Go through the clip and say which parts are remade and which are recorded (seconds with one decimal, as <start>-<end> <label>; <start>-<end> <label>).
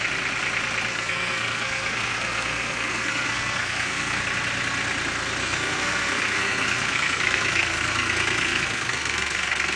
0.0-0.9 recorded; 0.9-4.2 remade; 4.2-5.4 recorded; 5.4-9.8 remade